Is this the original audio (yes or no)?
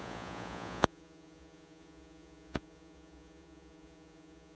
no